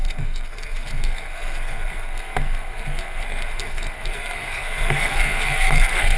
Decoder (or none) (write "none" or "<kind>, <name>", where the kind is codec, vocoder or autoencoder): codec, SNAC